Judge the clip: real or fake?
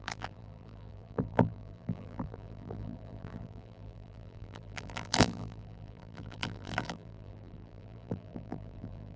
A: fake